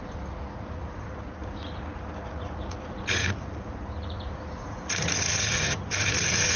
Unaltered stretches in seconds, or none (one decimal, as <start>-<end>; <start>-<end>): none

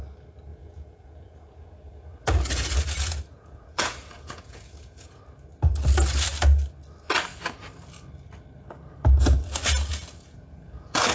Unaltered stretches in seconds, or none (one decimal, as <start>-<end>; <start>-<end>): 0.0-0.5; 5.2-9.9

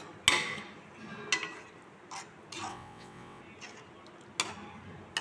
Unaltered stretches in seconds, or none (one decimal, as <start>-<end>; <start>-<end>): 0.0-2.7; 3.4-5.2

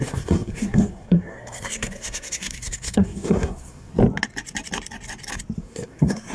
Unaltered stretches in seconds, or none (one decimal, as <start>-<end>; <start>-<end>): 3.9-5.6

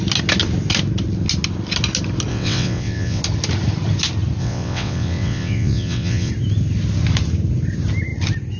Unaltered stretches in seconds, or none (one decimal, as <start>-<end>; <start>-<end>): 0.0-2.3; 3.2-4.4; 6.3-8.6

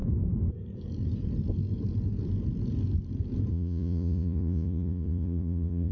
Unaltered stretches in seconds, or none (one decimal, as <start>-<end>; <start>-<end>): 0.0-3.5

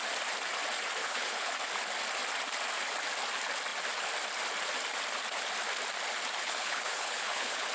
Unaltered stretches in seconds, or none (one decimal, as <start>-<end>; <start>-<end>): 0.0-1.0; 1.5-6.4

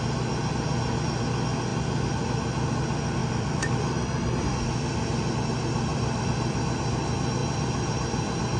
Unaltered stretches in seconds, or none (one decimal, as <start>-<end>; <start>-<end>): 0.0-3.2; 4.3-5.9; 6.6-7.4